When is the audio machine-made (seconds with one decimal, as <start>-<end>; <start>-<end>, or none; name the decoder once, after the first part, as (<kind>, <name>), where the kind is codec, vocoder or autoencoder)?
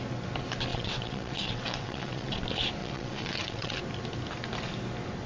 0.7-2.4 (vocoder, WaveNeXt); 2.8-3.8